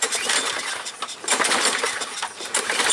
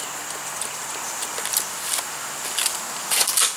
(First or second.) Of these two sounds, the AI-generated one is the first